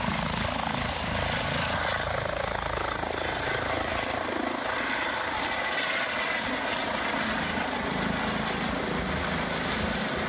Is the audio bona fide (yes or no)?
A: yes